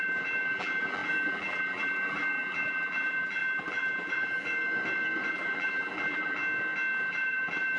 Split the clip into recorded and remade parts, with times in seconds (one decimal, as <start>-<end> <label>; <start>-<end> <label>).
0.0-4.5 remade; 4.5-5.3 recorded; 5.3-6.4 remade; 6.4-7.1 recorded; 7.1-7.8 remade